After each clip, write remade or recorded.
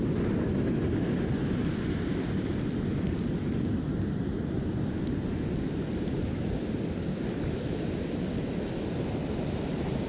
recorded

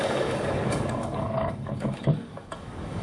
remade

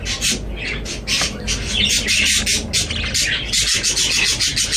recorded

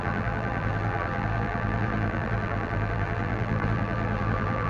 remade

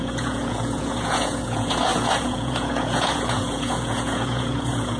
remade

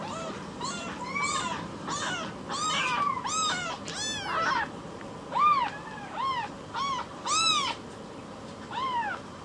recorded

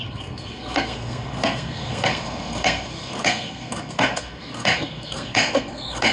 remade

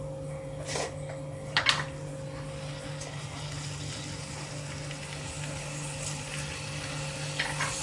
recorded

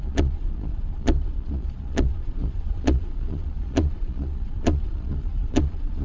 remade